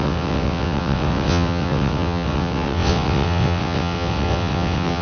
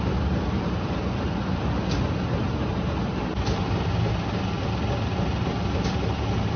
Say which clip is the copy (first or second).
first